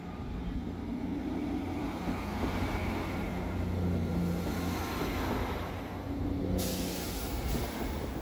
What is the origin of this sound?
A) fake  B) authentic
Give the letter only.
B